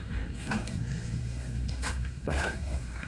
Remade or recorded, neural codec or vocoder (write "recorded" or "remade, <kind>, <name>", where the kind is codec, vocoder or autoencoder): remade, codec, SNAC